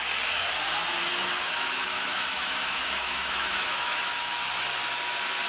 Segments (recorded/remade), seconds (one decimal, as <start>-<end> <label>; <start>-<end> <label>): 0.0-1.1 recorded; 1.1-4.4 remade; 4.4-5.5 recorded